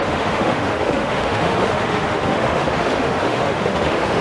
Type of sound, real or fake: fake